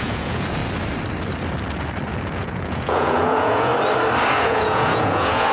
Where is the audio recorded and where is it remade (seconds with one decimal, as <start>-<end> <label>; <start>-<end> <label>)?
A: 0.0-0.6 remade; 0.6-2.1 recorded; 2.1-3.7 remade; 3.7-4.3 recorded; 4.3-5.5 remade